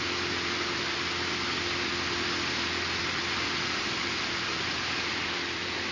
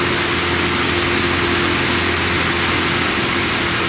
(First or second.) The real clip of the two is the second